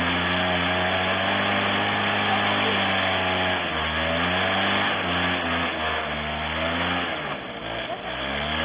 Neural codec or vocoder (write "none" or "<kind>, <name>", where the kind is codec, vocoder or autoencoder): none